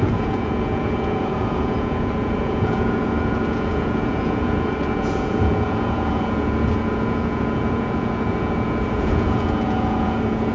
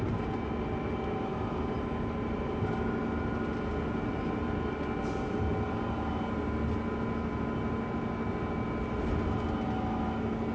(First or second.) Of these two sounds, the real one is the second